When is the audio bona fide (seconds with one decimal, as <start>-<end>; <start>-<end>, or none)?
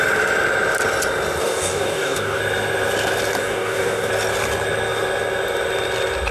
0.0-1.4; 2.4-3.4; 4.1-6.3